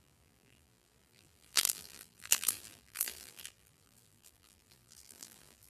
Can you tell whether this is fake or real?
fake